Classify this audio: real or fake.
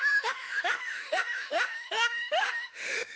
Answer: fake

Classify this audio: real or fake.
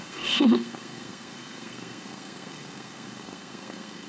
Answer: fake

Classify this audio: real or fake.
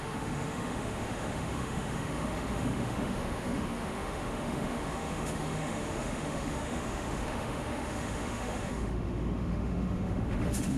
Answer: fake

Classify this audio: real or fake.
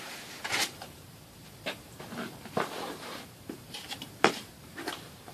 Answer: fake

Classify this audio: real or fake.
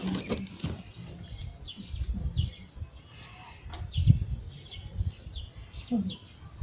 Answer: real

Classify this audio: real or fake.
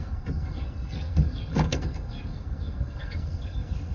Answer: fake